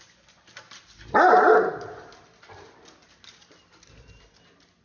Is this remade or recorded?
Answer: recorded